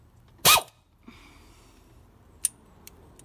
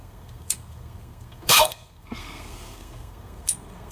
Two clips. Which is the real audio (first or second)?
first